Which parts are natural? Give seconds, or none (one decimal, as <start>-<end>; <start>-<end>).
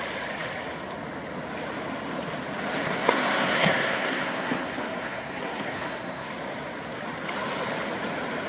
0.0-2.8; 6.3-8.5